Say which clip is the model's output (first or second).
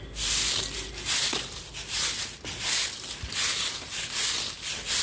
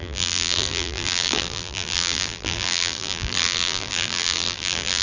second